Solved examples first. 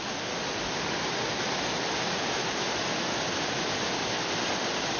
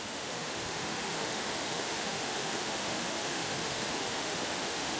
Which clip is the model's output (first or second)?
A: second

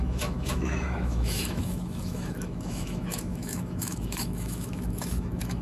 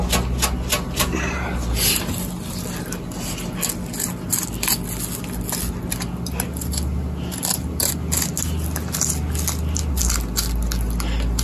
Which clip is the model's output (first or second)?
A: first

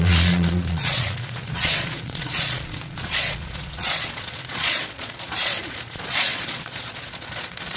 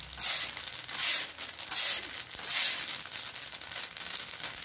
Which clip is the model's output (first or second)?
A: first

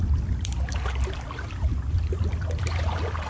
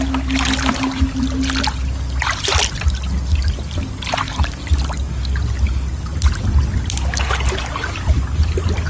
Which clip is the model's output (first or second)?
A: first